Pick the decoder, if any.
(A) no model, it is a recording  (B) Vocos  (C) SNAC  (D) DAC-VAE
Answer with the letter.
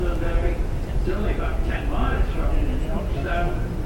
A